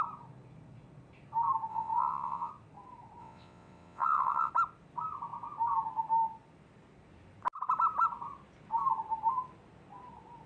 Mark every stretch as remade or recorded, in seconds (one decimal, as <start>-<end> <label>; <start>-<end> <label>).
0.0-1.7 recorded; 1.7-2.5 remade; 2.5-3.2 recorded; 3.2-4.5 remade; 4.5-10.5 recorded